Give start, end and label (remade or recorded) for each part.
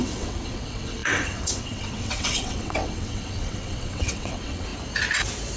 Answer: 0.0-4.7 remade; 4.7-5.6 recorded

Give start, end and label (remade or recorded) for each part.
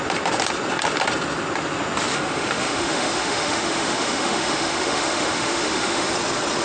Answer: 0.0-2.1 recorded; 2.1-6.1 remade; 6.1-6.6 recorded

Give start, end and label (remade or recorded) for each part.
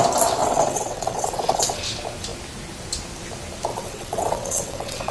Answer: 0.0-0.4 recorded; 0.4-1.8 remade; 1.8-3.7 recorded; 3.7-5.1 remade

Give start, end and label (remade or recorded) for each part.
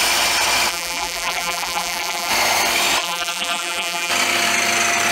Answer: 0.0-0.7 recorded; 0.7-2.3 remade; 2.3-3.0 recorded; 3.0-4.1 remade; 4.1-5.1 recorded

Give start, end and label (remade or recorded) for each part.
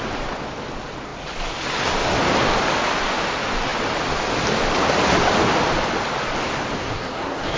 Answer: 0.0-6.8 recorded; 6.8-7.6 remade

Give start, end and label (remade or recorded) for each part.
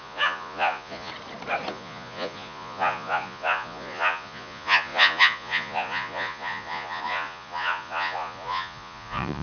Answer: 0.0-1.1 remade; 1.1-1.7 recorded; 1.7-9.4 remade